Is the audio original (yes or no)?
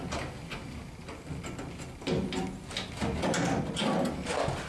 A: yes